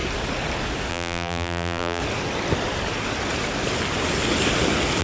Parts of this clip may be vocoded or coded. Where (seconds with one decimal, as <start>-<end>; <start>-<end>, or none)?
0.9-2.0